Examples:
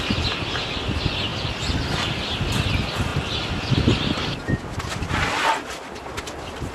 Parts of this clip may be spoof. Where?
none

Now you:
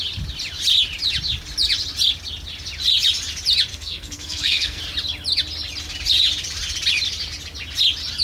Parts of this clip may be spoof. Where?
3.7-4.8 (codec, SNAC)

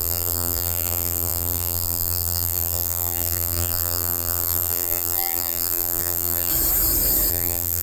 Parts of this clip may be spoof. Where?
0.0-6.5 (vocoder, BigVGAN v2); 7.3-7.8